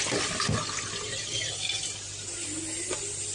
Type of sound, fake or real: real